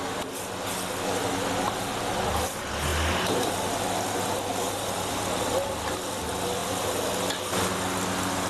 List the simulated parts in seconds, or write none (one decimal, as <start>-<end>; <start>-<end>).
none